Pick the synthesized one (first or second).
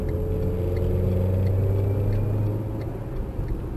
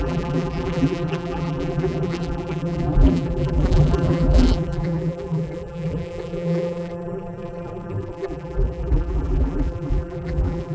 second